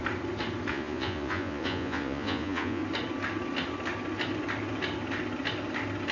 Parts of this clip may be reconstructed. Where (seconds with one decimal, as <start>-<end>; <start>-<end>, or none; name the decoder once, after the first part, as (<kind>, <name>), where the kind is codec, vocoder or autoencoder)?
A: 0.7-2.8 (vocoder, Vocos)